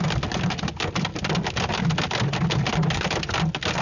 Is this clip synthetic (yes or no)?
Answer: no